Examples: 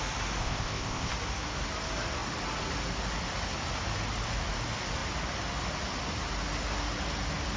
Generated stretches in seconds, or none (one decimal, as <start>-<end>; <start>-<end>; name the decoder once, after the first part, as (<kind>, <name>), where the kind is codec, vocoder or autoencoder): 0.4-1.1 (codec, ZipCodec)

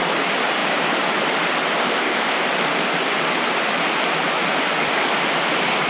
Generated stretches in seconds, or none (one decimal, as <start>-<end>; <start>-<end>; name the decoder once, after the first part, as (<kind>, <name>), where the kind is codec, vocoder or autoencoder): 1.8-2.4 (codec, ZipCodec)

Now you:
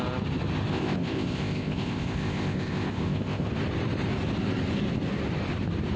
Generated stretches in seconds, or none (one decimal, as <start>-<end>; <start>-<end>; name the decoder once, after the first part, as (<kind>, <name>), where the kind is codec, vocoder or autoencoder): 0.7-3.5 (codec, ZipCodec)

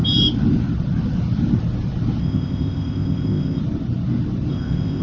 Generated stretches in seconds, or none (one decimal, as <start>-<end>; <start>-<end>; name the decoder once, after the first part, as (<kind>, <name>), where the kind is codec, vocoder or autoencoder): 2.2-3.6 (codec, ZipCodec); 4.5-5.0

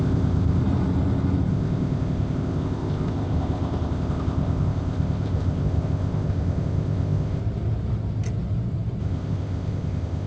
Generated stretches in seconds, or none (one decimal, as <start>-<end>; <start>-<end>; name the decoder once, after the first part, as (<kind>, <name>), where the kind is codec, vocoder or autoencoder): 0.0-0.6 (codec, ZipCodec); 1.5-7.4; 9.0-10.3